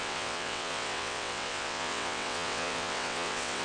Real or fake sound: fake